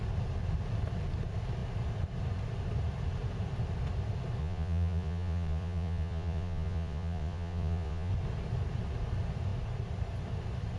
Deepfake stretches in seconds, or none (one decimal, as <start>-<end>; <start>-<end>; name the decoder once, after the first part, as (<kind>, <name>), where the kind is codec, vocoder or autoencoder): 4.4-8.1 (vocoder, Vocos)